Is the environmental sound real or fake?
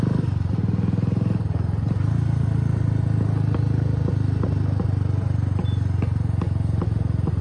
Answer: real